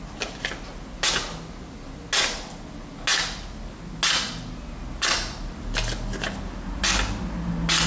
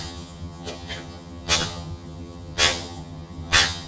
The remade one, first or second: second